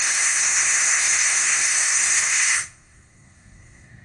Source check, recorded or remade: remade